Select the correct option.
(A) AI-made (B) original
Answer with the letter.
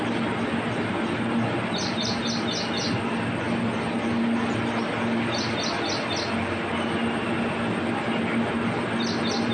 B